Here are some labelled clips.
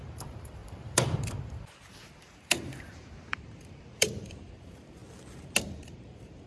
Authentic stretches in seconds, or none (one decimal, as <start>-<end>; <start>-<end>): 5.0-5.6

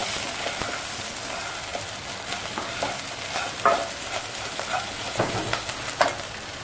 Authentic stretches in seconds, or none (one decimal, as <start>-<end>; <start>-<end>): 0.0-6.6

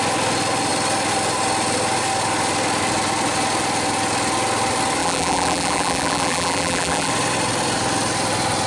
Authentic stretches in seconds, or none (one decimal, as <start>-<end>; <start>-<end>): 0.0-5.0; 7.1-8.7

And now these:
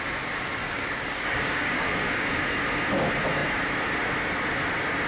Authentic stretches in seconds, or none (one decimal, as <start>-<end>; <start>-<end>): 0.0-0.6; 2.4-5.1

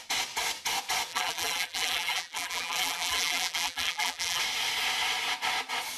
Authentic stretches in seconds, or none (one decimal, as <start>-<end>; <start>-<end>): 0.0-1.1; 4.4-6.0

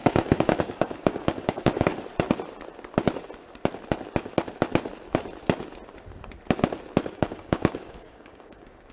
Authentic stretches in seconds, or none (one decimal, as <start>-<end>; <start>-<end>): 1.9-7.1